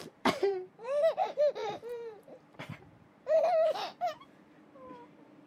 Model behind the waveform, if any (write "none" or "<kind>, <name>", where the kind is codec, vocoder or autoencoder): vocoder, BigVGAN v2